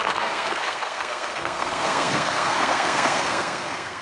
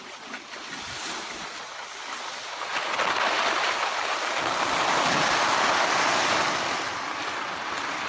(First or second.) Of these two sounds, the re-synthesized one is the first